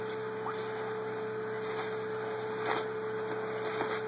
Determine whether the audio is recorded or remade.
recorded